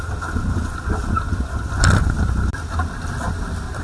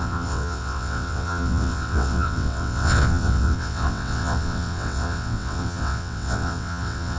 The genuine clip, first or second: first